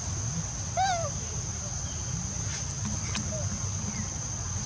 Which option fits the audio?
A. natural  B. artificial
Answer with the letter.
A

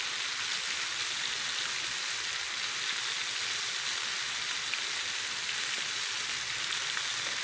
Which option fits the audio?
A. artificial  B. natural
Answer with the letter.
B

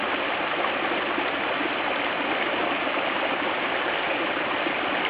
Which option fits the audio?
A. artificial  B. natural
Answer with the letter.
B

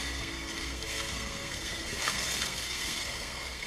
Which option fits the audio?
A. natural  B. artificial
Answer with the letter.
B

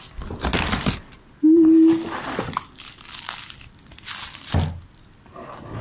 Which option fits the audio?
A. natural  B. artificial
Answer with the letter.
A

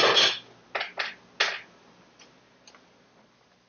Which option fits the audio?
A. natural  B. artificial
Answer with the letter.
A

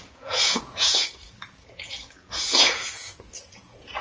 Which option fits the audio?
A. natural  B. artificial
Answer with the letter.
B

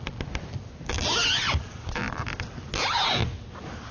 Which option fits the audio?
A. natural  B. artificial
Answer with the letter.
A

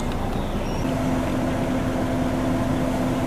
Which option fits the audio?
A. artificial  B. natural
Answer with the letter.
B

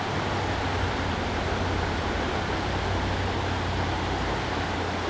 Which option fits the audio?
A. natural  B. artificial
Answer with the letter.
A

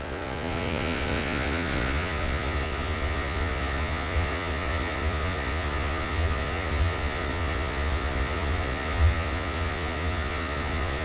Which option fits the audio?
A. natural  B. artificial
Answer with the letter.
B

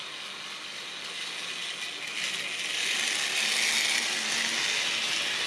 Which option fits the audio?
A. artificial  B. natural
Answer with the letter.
B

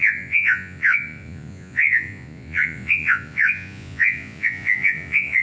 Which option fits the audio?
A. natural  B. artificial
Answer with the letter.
B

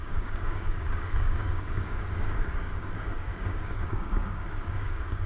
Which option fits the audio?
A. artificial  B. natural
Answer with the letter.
A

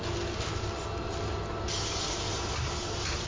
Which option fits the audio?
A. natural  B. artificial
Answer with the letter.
A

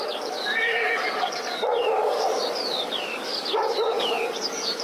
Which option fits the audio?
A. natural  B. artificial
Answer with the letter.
B